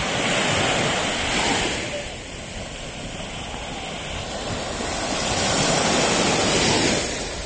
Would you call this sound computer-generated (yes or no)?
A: no